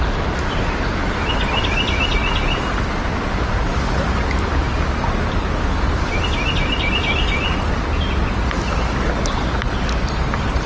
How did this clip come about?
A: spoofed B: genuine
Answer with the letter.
B